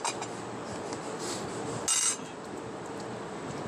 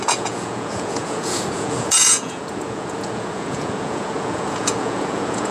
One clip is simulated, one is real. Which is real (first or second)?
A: first